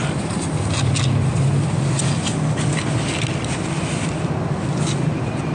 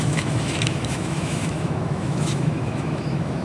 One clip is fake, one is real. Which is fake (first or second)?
second